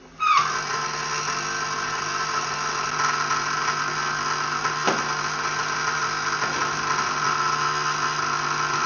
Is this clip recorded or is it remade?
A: recorded